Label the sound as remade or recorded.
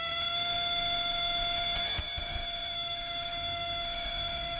remade